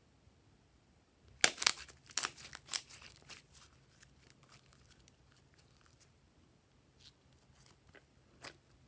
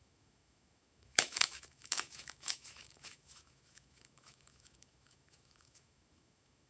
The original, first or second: first